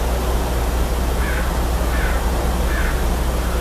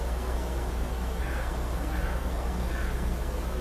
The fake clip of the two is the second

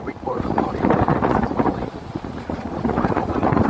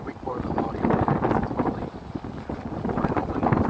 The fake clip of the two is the first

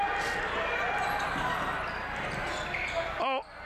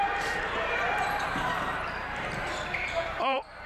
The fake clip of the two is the second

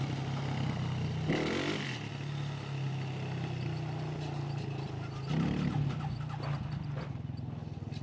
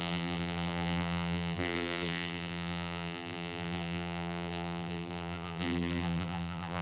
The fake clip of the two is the second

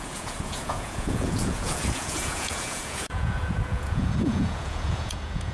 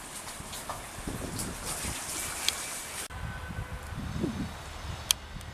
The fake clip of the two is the first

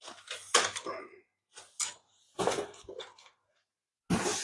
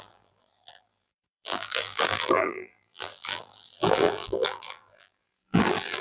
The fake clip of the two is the second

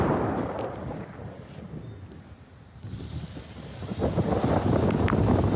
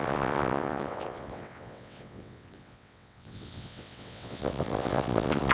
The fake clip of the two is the second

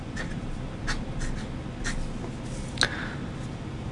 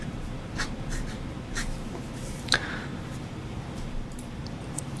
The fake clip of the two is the second